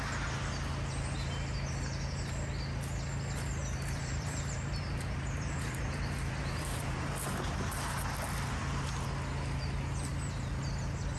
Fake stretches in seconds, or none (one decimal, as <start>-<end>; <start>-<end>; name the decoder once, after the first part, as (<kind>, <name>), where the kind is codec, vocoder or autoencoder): 3.6-7.1 (vocoder, BigVGAN v2); 10.1-10.6